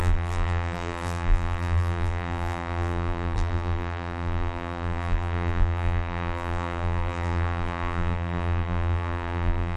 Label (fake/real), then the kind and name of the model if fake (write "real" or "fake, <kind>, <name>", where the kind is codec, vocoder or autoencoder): fake, vocoder, BigVGAN v2